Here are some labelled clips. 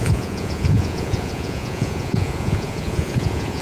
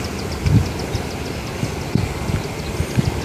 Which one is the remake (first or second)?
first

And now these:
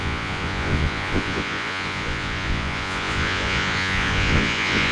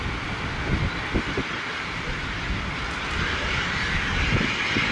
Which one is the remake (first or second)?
first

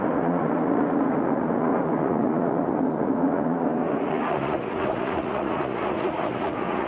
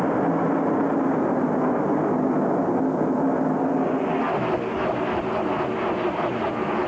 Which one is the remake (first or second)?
first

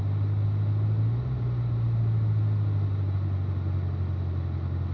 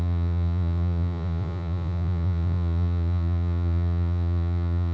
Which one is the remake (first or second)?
second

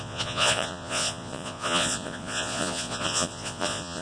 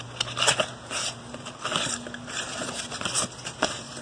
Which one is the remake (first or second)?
first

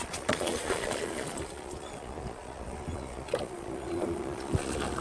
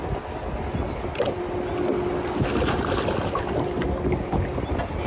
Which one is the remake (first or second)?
first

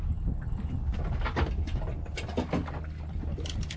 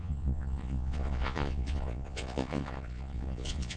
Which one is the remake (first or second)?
second